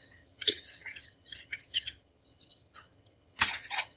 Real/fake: fake